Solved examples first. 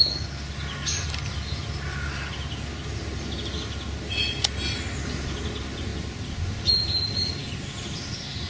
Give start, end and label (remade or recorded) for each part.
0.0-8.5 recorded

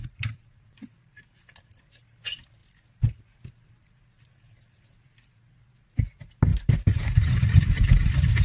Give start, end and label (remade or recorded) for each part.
0.0-1.2 remade; 1.2-6.5 recorded; 6.5-8.4 remade

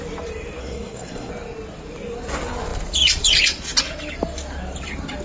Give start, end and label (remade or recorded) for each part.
0.0-0.6 recorded; 0.6-1.3 remade; 1.3-5.2 recorded